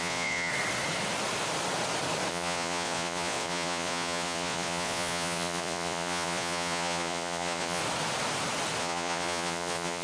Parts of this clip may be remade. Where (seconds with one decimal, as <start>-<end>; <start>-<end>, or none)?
0.0-0.5; 2.3-7.8; 8.8-10.0